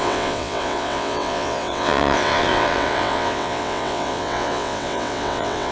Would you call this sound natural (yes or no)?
no